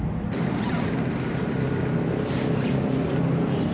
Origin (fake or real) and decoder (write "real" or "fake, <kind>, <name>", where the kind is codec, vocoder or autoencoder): real